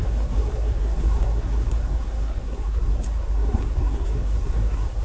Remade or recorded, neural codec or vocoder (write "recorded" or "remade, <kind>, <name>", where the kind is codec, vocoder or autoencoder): remade, codec, SNAC